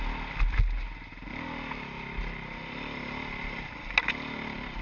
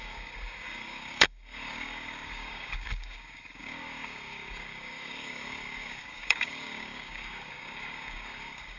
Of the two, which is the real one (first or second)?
first